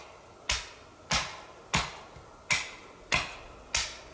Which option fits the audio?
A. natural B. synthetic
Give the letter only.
A